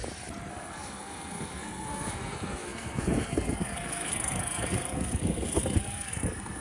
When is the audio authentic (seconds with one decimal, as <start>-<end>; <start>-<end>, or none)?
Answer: 0.0-0.5